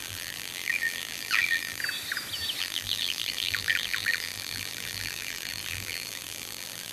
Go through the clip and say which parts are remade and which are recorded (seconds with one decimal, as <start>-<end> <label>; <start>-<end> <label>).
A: 0.0-1.8 remade; 1.8-2.6 recorded; 2.6-6.9 remade